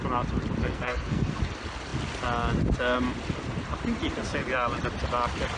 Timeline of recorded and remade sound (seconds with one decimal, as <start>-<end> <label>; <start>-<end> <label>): 0.0-0.6 recorded; 0.6-1.4 remade; 1.4-5.6 recorded